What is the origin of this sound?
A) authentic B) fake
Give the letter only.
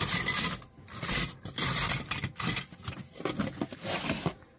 A